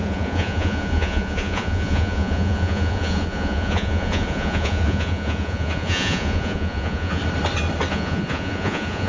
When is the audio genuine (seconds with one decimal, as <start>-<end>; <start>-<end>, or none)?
7.2-7.9